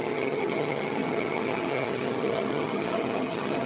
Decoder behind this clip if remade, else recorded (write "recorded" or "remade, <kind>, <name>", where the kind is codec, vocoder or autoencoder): remade, vocoder, HiFi-GAN